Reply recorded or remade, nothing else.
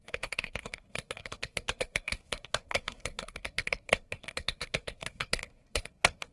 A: remade